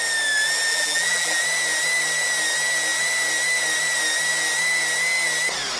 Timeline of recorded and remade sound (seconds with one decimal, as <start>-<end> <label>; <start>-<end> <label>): 0.0-0.7 recorded; 0.7-1.4 remade; 1.4-5.8 recorded